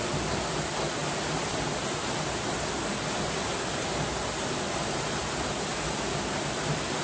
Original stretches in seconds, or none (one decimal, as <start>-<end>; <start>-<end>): 0.0-7.0